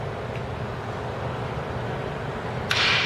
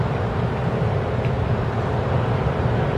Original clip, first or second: first